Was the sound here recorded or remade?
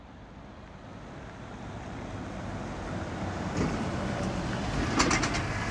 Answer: recorded